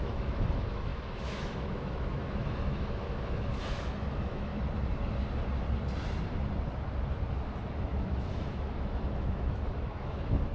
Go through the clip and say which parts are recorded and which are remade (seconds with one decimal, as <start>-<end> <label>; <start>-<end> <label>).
0.0-4.5 remade; 4.5-7.7 recorded; 7.7-10.5 remade